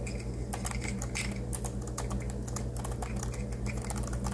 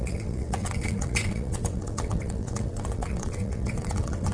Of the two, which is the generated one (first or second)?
second